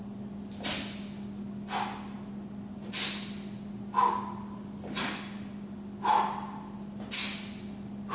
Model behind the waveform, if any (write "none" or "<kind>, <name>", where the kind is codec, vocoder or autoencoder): none